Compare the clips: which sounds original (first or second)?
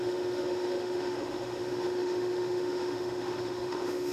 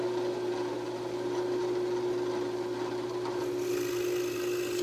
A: second